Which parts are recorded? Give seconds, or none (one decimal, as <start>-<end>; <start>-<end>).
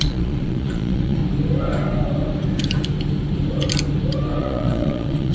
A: 1.2-4.4